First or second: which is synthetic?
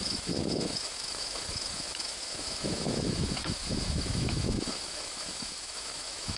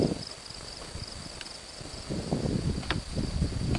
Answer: first